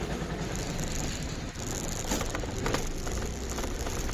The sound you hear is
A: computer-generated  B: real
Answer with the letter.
B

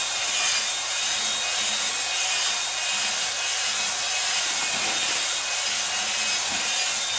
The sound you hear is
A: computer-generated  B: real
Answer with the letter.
B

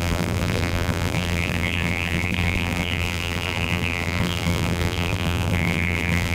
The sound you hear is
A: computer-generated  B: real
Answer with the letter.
A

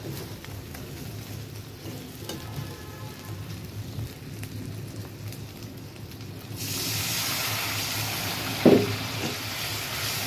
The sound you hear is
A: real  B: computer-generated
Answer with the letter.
A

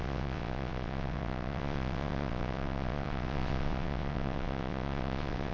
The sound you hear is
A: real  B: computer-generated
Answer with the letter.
B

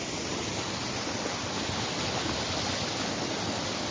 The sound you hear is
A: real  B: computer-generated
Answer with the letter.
A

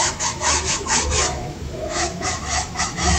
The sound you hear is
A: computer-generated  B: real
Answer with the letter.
A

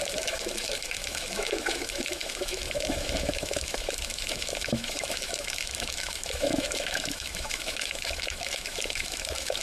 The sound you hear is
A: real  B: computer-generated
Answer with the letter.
B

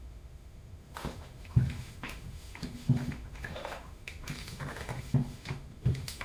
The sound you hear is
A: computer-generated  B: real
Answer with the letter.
A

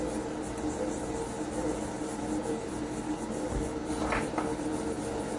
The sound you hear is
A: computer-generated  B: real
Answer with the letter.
B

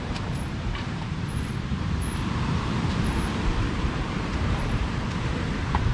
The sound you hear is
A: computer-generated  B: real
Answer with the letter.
A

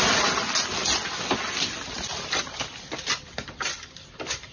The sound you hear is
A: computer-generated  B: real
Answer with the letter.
B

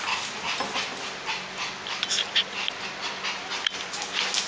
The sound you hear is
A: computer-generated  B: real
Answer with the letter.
B